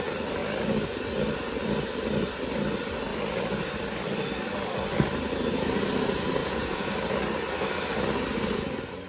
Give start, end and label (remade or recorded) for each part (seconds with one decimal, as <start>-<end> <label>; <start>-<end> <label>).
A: 0.0-6.4 recorded; 6.4-6.9 remade; 6.9-9.1 recorded